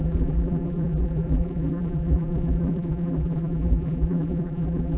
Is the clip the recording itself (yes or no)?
no